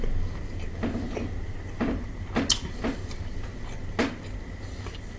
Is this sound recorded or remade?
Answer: recorded